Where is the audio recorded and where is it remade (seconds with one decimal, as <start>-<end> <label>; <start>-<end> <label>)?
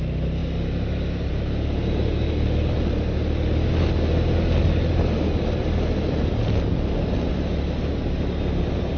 0.0-9.0 recorded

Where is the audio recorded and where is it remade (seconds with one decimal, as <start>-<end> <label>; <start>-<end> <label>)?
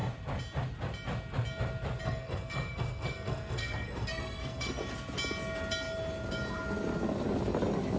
0.0-2.0 recorded; 2.0-4.8 remade; 4.8-8.0 recorded